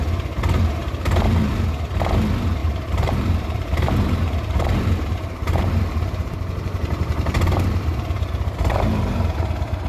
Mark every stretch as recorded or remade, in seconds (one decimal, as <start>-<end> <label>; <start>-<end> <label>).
0.0-2.6 recorded; 2.6-7.8 remade; 7.8-9.9 recorded